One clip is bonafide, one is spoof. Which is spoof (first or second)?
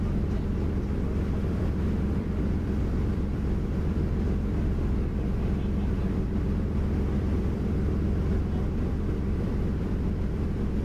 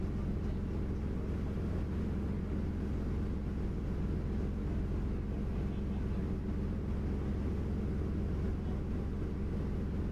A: first